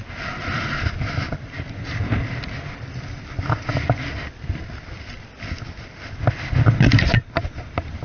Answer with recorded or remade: recorded